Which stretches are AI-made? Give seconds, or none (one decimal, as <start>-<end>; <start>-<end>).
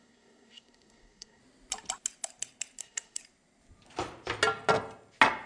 0.0-1.4; 2.8-3.2